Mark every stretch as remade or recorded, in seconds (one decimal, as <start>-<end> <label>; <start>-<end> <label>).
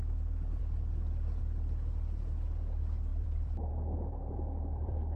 0.0-3.1 recorded; 3.1-3.7 remade; 3.7-4.2 recorded; 4.2-5.2 remade